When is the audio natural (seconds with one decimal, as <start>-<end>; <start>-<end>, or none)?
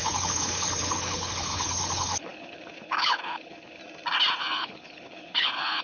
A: 3.8-4.4